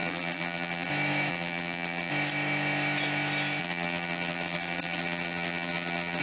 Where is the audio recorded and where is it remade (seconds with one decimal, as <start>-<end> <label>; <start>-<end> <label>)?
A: 0.0-0.9 remade; 0.9-1.3 recorded; 1.3-2.1 remade; 2.1-3.6 recorded; 3.6-6.2 remade

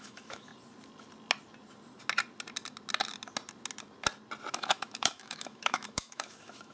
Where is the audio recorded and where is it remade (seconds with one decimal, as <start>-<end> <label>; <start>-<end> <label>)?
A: 0.0-0.5 remade; 0.5-4.5 recorded; 4.5-6.7 remade